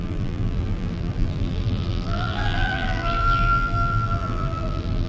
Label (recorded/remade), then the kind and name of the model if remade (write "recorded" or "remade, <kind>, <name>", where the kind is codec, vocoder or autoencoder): remade, vocoder, BigVGAN v2